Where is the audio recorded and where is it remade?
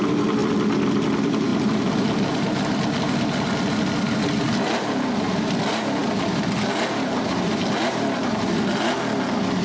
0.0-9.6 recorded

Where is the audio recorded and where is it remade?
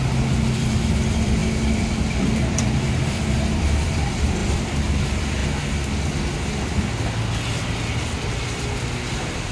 0.0-1.4 remade; 1.4-2.5 recorded; 2.5-5.4 remade; 5.4-8.3 recorded; 8.3-9.5 remade